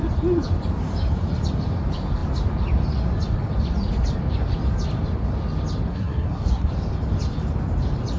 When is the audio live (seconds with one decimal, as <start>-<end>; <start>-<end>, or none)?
0.0-5.9; 6.7-8.2